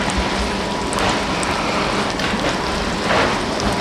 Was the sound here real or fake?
real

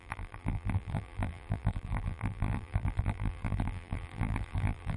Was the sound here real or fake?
fake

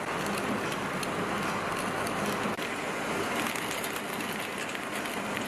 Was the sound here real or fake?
real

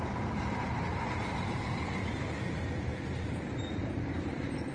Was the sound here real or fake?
fake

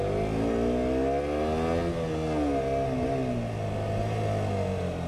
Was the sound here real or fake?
real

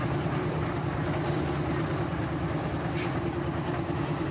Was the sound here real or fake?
fake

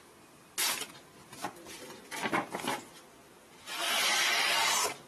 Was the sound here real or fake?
real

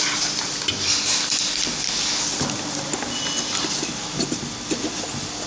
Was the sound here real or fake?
real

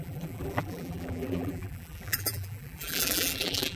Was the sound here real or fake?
fake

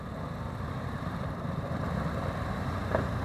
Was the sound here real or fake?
fake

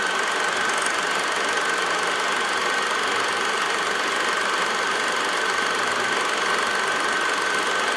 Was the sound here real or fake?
real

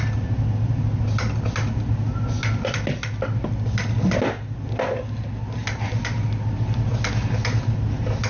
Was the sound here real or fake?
real